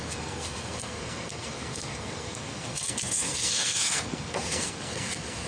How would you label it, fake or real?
fake